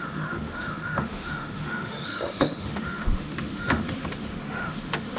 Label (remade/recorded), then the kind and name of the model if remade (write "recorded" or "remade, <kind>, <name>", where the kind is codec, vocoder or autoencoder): remade, autoencoder, DAC-VAE